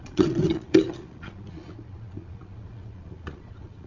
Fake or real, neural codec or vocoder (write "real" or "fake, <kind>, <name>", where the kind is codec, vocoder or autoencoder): fake, vocoder, Vocos